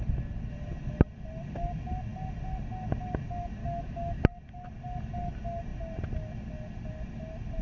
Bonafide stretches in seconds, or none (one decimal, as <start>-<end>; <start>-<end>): 0.0-3.6; 4.2-7.6